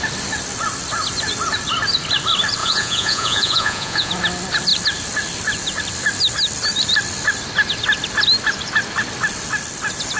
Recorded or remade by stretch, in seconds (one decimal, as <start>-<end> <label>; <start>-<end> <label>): 0.0-2.6 recorded; 2.6-4.1 remade; 4.1-10.2 recorded